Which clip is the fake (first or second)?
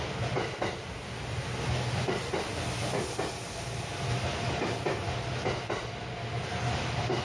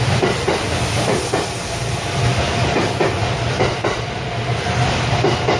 second